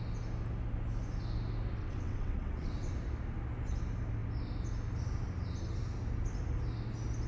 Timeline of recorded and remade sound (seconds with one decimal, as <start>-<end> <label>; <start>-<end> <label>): 0.0-1.8 recorded; 1.8-2.9 remade; 2.9-7.3 recorded